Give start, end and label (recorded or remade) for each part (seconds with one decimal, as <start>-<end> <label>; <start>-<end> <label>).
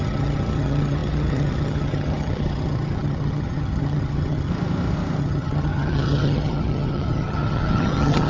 0.0-4.5 remade; 4.5-5.2 recorded; 5.2-8.3 remade